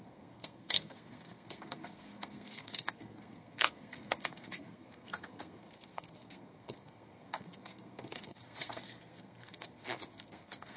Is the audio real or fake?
fake